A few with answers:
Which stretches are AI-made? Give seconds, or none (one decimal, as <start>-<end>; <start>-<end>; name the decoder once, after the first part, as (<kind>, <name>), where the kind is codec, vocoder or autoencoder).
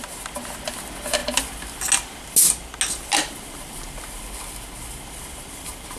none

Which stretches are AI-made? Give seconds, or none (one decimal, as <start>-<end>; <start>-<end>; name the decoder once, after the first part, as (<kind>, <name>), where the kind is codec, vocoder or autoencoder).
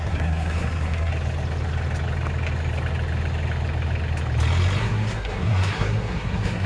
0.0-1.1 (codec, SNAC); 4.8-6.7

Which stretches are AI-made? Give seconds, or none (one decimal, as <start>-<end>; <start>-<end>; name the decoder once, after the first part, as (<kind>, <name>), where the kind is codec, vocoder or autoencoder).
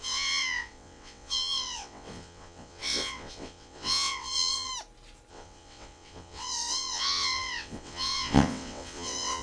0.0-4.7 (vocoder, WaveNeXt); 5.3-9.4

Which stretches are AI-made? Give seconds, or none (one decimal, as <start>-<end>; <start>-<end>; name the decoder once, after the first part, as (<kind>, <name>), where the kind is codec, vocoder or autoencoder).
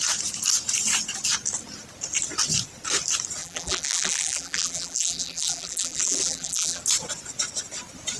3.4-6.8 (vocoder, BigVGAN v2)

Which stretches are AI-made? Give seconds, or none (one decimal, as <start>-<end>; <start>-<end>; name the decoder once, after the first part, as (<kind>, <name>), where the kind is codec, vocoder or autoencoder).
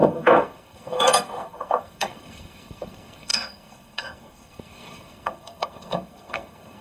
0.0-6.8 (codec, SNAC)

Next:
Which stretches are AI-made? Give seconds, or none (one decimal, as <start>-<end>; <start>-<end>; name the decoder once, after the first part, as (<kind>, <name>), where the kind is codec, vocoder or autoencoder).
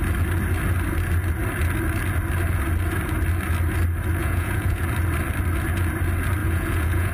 4.2-4.8 (vocoder, Vocos); 6.4-7.1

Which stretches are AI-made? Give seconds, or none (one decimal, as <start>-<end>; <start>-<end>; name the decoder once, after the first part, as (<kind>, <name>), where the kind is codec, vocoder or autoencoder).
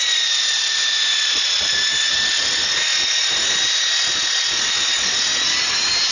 none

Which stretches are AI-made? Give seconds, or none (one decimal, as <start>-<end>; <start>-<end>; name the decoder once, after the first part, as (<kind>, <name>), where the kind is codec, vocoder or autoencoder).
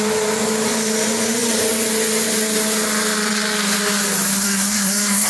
4.3-5.3 (codec, SNAC)